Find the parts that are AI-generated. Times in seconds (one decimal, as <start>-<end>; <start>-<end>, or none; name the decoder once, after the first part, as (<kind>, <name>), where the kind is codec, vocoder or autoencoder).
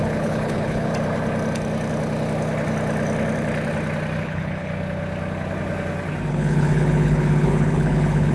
0.0-0.9 (codec, HILCodec); 4.2-4.7; 6.3-8.3